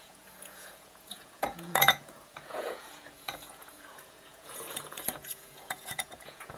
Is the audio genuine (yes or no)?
no